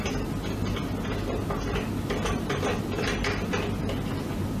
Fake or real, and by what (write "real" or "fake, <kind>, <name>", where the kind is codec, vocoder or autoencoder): real